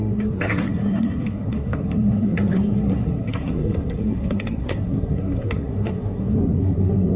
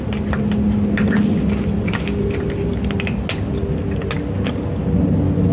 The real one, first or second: second